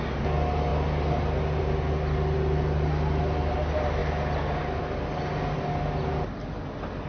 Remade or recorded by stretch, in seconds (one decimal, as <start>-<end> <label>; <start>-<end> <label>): 0.0-7.1 recorded